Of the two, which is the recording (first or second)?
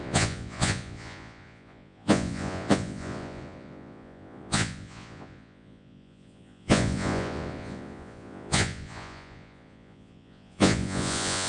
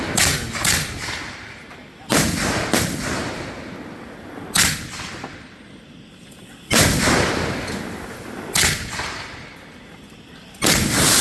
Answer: second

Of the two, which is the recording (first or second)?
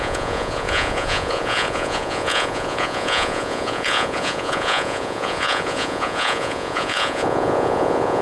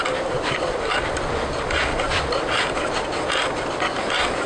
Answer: second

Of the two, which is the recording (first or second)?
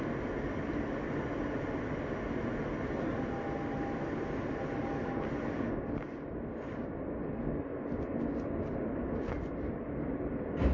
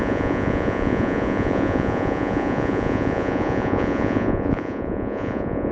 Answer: first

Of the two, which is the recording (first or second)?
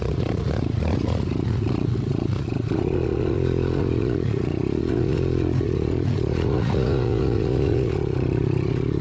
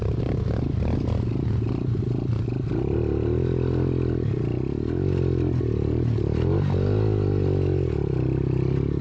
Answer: second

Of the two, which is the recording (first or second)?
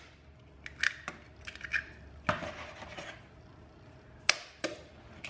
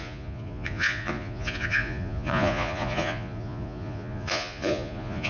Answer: first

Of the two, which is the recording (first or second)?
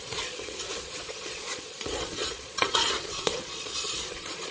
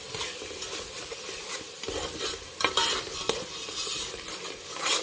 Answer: second